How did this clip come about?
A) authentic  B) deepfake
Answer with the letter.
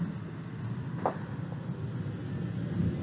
A